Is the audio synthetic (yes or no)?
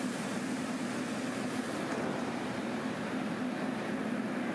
no